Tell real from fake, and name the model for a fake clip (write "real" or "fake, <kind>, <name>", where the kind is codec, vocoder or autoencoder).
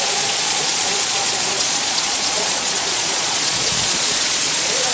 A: fake, vocoder, Vocos